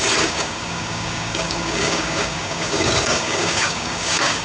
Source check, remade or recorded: remade